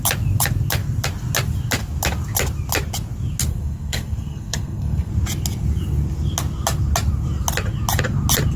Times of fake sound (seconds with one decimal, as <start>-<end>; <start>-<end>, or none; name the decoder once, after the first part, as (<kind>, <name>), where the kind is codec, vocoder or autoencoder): 3.5-5.1 (codec, SNAC)